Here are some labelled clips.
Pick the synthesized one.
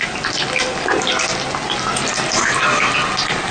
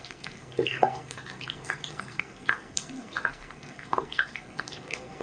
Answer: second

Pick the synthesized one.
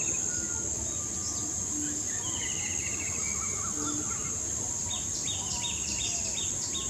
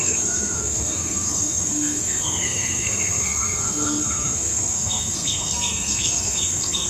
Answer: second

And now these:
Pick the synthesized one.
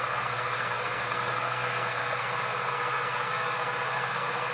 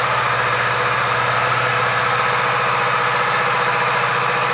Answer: first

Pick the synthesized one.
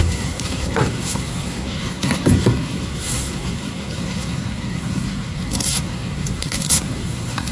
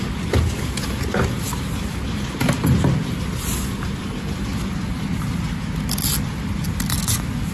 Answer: first